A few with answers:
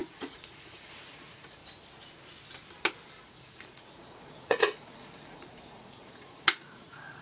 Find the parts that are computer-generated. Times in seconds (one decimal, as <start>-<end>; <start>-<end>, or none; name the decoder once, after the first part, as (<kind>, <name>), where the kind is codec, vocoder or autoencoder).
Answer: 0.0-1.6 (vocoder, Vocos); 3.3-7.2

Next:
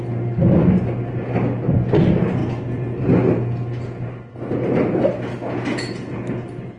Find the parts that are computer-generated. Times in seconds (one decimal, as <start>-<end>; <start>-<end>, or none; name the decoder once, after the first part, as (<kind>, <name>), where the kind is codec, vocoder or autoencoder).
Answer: none

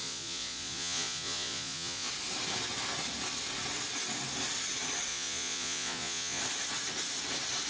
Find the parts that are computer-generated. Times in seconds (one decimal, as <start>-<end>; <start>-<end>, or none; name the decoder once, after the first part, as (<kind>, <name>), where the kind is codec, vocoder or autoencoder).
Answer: 0.0-2.1 (vocoder, Vocos); 5.1-6.4